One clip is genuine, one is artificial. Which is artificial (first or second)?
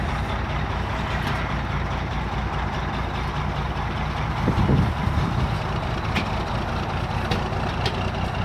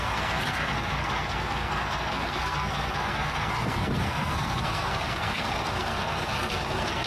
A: second